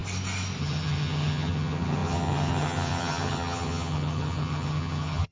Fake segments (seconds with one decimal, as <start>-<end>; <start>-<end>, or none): 0.6-5.3

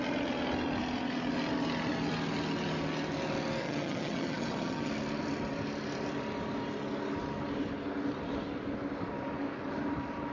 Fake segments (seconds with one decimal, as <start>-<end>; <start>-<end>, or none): 3.6-4.9

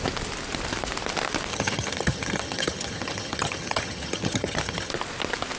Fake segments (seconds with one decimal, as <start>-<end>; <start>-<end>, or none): 1.5-4.9